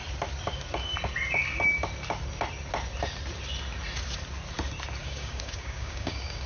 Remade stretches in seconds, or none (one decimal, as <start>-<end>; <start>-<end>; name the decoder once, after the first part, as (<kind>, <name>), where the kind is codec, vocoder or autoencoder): 5.0-6.5 (codec, DAC)